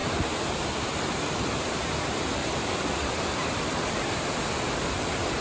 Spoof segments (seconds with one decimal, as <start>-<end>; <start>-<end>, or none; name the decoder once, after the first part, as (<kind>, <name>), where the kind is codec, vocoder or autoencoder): 0.0-1.8 (vocoder, BigVGAN v2); 2.4-4.4